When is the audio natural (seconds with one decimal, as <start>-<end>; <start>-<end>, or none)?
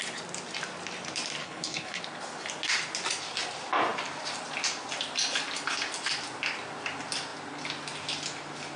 0.0-1.4; 2.0-8.8